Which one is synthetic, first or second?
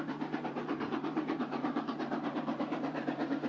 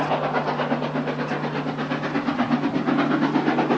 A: first